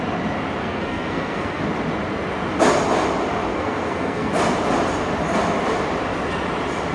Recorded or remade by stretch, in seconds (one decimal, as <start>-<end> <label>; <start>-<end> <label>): 0.0-0.6 recorded; 0.6-1.6 remade; 1.6-3.5 recorded; 3.5-4.3 remade; 4.3-6.9 recorded